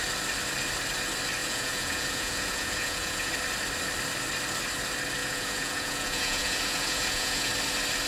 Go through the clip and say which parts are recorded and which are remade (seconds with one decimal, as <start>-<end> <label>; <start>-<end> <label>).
0.0-1.4 recorded; 1.4-3.3 remade; 3.3-5.2 recorded; 5.2-7.5 remade; 7.5-8.1 recorded